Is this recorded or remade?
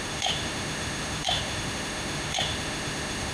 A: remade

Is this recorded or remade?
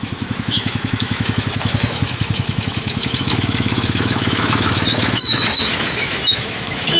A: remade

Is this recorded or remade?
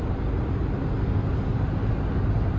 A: recorded